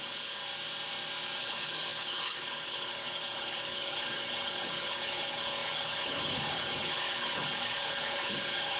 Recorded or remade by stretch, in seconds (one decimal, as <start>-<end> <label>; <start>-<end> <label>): 0.0-0.4 remade; 0.4-1.4 recorded; 1.4-8.8 remade